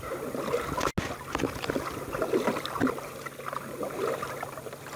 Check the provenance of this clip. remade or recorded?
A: recorded